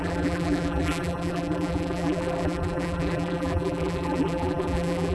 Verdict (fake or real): fake